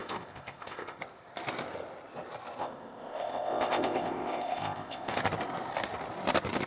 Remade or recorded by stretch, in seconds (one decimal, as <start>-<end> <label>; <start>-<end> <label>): 0.0-1.0 remade; 1.0-2.6 recorded; 2.6-5.2 remade; 5.2-6.7 recorded